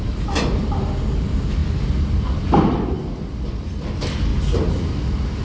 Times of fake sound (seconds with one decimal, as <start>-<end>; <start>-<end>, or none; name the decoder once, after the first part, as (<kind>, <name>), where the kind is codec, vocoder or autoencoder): none